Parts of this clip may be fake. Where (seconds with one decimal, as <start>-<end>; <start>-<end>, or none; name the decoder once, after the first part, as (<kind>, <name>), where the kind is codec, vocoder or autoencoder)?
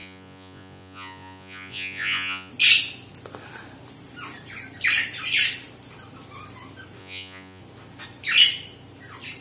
0.0-2.5 (vocoder, Vocos); 7.0-7.6